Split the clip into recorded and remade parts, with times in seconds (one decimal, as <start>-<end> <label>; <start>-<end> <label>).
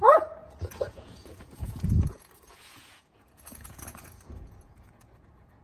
0.0-5.6 remade